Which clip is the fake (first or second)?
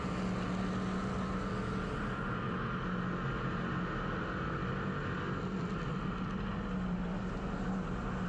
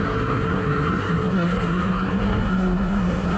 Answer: second